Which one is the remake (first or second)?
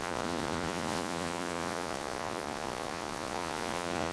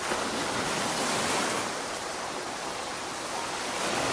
first